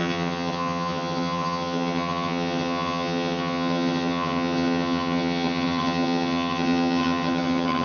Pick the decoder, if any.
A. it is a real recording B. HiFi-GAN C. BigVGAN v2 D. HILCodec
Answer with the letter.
B